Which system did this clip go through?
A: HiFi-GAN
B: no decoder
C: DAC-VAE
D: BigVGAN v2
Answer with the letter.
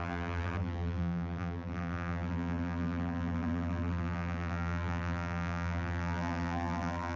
D